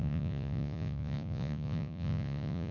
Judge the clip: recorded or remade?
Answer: remade